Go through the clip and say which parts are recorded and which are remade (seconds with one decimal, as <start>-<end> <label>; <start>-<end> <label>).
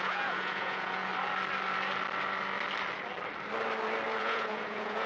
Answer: 0.0-1.1 remade; 1.1-4.2 recorded; 4.2-5.1 remade